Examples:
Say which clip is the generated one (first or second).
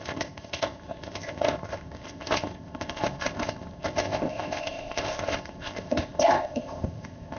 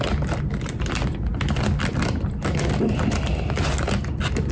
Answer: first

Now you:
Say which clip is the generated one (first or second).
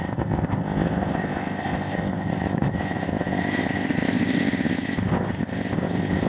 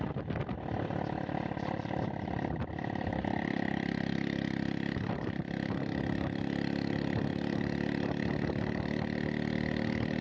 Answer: first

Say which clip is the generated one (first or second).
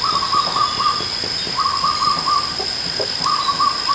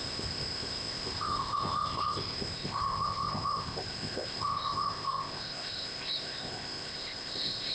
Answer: second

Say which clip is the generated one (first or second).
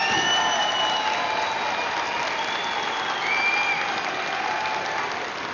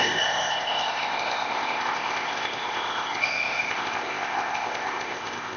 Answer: second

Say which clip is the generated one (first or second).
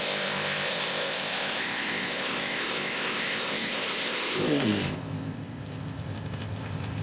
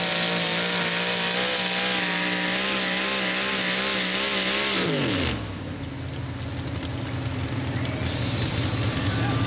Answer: first